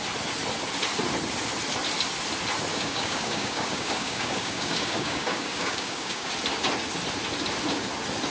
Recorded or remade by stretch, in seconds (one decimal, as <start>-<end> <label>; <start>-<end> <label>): 0.0-2.7 recorded; 2.7-6.3 remade; 6.3-8.3 recorded